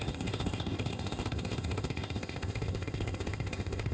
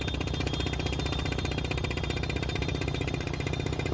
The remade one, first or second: first